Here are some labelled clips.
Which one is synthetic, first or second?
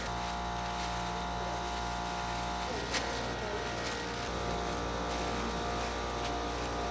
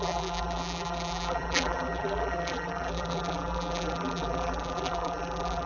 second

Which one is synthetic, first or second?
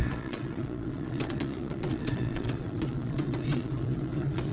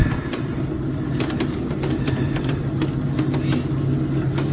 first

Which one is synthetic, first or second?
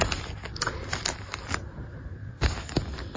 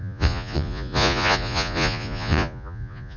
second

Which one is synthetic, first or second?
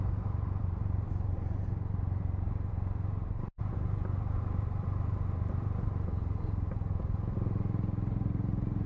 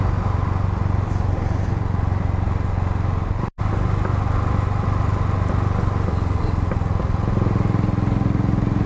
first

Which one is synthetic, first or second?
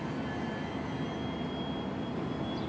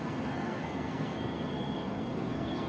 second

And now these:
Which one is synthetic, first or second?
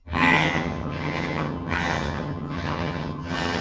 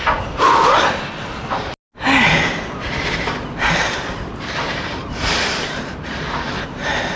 first